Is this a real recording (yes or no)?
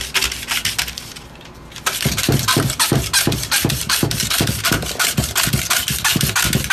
yes